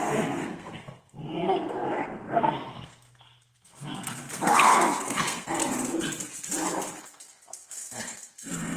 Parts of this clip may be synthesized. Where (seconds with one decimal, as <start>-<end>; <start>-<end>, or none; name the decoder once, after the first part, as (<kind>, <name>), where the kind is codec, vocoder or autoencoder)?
0.0-5.6 (codec, SNAC); 7.0-8.8

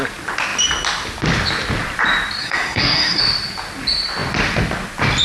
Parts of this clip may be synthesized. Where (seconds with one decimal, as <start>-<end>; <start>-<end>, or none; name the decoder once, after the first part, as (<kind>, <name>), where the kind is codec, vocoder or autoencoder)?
2.4-3.2 (codec, SNAC)

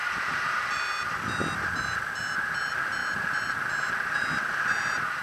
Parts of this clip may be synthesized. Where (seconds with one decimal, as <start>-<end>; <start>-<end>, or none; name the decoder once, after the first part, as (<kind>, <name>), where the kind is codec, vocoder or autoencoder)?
0.0-0.8 (vocoder, BigVGAN v2)